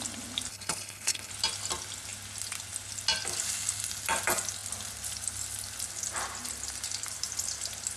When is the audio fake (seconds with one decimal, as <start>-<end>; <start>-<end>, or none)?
0.5-1.3